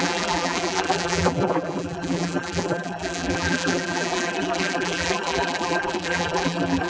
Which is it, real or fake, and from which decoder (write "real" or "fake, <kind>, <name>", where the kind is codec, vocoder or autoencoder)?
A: fake, vocoder, BigVGAN v2